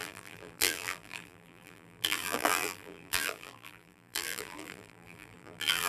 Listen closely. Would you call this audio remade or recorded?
remade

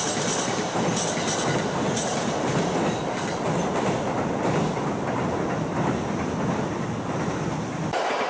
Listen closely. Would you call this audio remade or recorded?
recorded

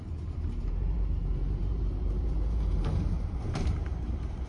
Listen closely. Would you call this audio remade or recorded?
remade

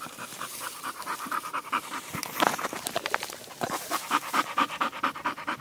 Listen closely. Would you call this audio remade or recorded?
remade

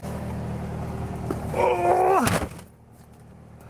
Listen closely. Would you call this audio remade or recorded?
recorded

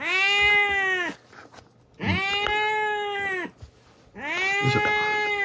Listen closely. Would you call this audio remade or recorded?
recorded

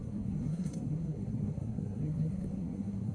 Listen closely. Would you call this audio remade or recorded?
remade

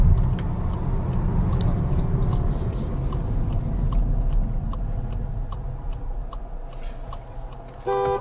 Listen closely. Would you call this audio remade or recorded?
recorded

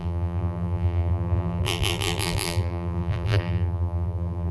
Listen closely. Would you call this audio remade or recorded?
remade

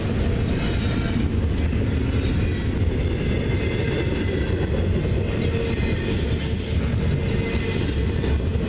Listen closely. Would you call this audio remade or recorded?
recorded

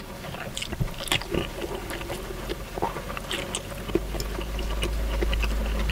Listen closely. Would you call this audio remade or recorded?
recorded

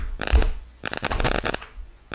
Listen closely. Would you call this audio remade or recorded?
remade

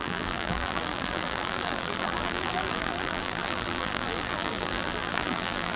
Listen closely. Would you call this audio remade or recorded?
remade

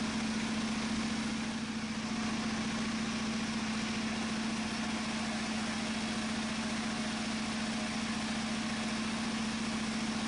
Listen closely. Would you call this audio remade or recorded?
recorded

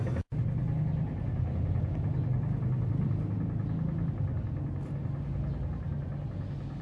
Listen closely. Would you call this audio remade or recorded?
recorded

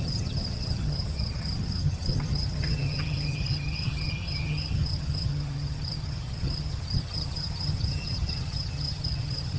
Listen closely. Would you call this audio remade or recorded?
remade